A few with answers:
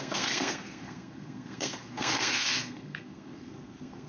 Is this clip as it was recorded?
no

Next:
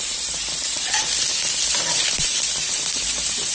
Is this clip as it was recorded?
no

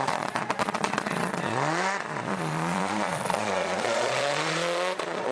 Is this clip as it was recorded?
no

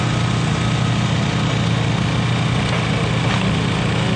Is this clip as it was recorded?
yes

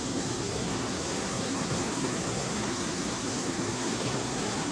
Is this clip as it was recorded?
no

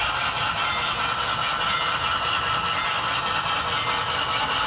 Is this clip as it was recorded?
yes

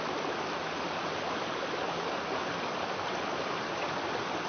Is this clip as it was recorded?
yes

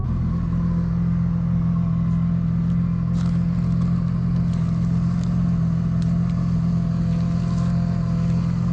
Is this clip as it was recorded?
yes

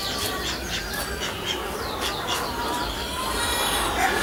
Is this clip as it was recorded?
yes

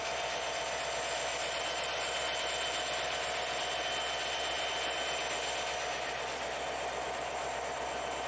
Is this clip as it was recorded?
yes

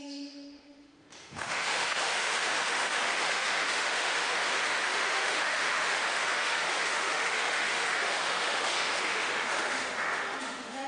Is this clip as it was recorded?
no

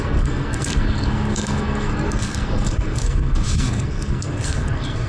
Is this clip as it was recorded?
no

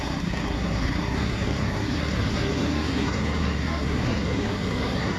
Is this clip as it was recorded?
no